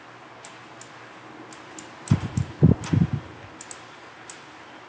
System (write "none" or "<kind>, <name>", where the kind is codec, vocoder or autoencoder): none